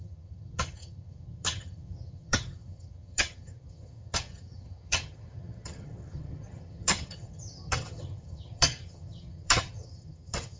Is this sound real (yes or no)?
no